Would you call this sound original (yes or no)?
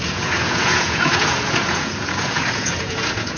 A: no